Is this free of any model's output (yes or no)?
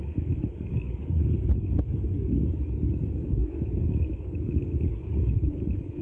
no